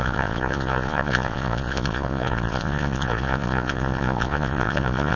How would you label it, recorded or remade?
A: remade